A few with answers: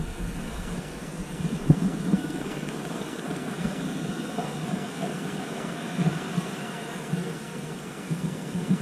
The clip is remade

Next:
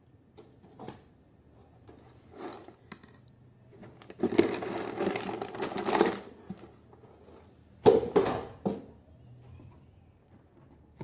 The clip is recorded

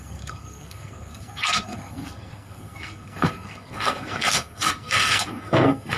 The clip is remade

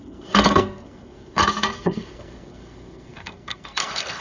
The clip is remade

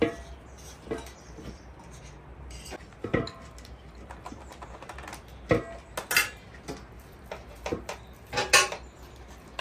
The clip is recorded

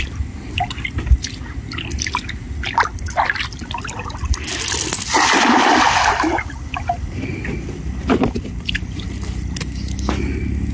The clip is recorded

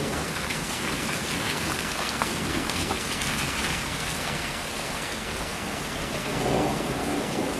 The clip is remade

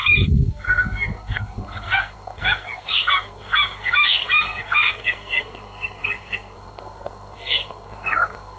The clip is remade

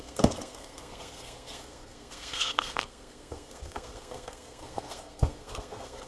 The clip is remade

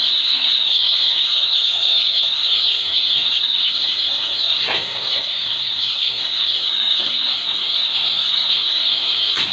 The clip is remade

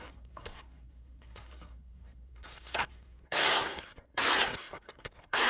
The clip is remade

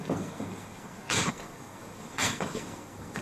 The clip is remade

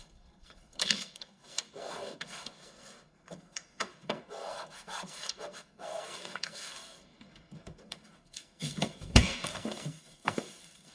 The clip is remade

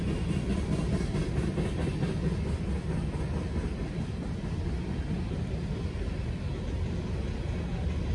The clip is recorded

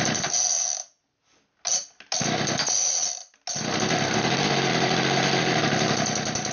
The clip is recorded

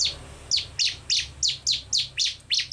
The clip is recorded